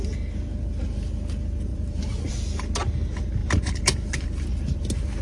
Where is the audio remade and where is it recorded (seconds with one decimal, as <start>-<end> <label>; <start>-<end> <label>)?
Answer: 0.0-1.7 recorded; 1.7-2.3 remade; 2.3-3.4 recorded; 3.4-4.8 remade; 4.8-5.2 recorded